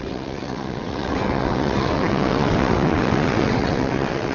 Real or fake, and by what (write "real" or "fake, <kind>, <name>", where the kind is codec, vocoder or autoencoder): fake, vocoder, WaveNeXt